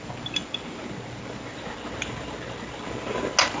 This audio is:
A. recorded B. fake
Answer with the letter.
A